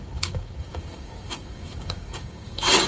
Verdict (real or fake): fake